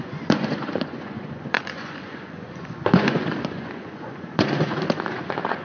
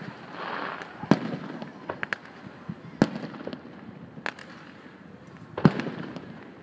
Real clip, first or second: second